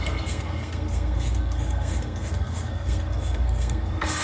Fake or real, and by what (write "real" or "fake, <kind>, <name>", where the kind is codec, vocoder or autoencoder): fake, codec, SNAC